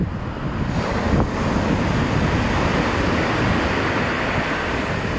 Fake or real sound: real